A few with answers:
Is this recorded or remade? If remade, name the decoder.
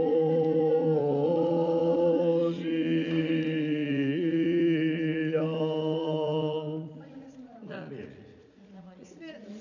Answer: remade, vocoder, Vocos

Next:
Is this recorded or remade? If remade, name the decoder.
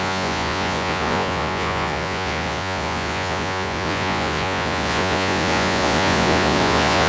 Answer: remade, vocoder, Vocos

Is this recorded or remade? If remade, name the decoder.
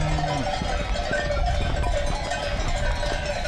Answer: recorded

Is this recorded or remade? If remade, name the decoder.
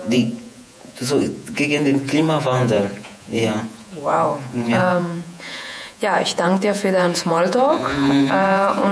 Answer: remade, vocoder, Vocos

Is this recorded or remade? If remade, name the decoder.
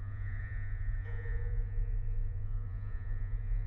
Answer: remade, vocoder, Vocos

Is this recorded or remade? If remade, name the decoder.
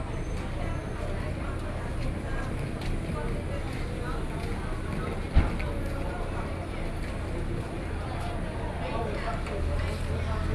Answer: recorded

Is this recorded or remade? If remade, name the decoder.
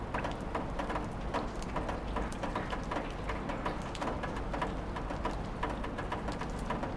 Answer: recorded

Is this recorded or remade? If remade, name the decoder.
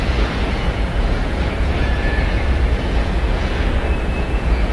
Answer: remade, vocoder, Vocos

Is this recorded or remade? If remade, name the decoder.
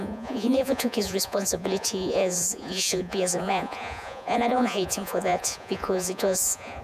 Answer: remade, vocoder, Vocos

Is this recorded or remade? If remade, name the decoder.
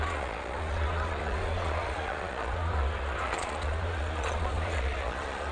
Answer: remade, vocoder, Vocos